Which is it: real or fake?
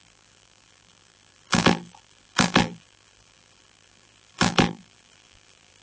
fake